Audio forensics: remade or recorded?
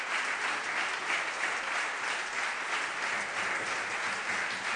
recorded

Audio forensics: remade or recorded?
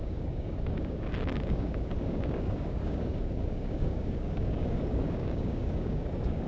remade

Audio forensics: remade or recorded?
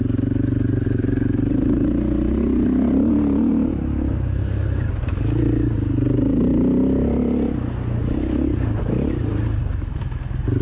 recorded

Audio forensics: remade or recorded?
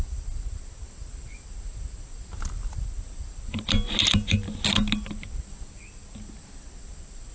recorded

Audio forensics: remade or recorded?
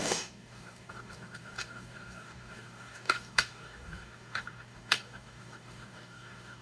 remade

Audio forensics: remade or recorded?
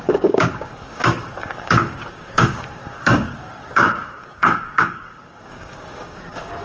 remade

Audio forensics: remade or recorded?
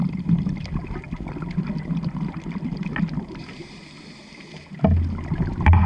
recorded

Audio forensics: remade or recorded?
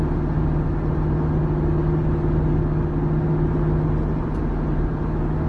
recorded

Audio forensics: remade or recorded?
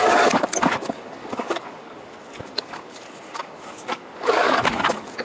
remade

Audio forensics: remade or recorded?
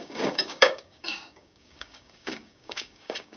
remade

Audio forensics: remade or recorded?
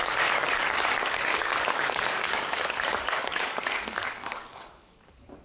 remade